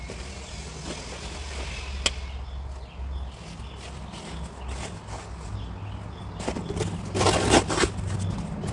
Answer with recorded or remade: recorded